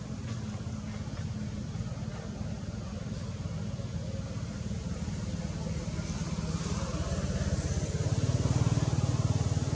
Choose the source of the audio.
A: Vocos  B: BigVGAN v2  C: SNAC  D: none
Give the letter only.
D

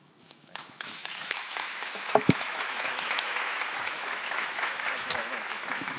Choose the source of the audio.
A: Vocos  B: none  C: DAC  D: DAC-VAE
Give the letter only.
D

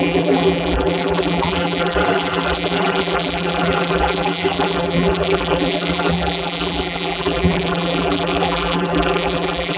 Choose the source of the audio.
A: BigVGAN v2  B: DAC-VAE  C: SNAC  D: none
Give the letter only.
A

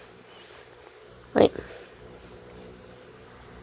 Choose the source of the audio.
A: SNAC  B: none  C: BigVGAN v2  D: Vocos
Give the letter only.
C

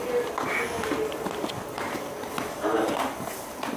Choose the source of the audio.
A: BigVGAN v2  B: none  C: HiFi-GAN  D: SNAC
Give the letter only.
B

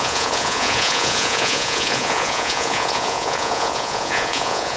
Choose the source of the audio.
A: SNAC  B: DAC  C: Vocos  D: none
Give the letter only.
C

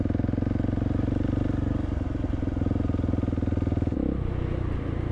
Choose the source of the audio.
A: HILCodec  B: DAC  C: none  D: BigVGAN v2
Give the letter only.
C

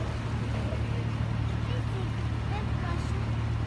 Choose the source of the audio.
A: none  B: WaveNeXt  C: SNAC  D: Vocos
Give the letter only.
A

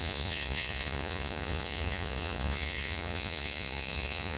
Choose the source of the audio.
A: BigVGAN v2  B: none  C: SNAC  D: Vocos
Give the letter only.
D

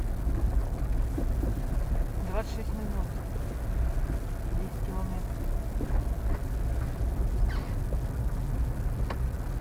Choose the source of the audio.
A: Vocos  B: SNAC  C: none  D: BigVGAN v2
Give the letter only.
C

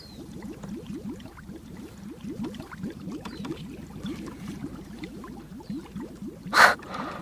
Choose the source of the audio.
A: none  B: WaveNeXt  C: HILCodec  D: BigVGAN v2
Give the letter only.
D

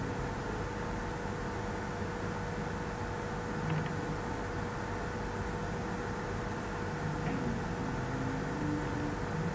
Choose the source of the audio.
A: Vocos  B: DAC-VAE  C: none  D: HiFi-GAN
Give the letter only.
C